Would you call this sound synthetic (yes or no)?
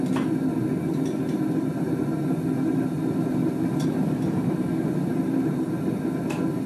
no